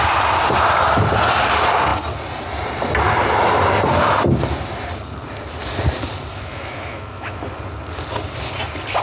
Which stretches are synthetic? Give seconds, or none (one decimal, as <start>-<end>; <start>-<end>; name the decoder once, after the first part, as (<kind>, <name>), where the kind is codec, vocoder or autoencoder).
6.3-7.5 (autoencoder, DAC-VAE)